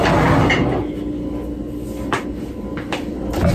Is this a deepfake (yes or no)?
no